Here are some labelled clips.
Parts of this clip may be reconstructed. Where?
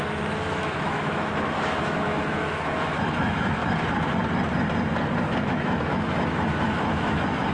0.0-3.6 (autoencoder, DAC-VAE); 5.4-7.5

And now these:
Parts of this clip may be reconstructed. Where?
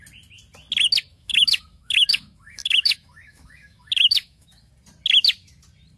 1.1-4.7 (autoencoder, DAC-VAE)